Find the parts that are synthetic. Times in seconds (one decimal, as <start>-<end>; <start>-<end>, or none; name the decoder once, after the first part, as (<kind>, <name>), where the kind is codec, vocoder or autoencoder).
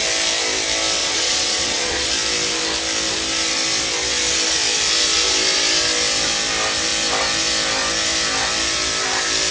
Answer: 1.0-2.1 (vocoder, Vocos)